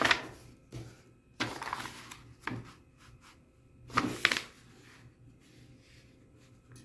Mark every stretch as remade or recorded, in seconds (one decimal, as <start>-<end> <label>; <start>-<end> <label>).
0.0-6.8 recorded